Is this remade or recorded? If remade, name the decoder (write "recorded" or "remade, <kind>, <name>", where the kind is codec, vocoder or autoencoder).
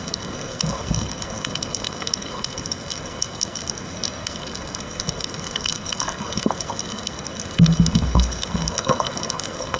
remade, codec, SNAC